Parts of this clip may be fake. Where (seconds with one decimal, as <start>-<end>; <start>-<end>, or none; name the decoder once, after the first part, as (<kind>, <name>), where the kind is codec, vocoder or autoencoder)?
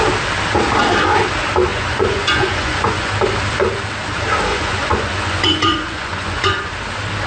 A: 1.7-3.1 (vocoder, Vocos); 4.5-6.7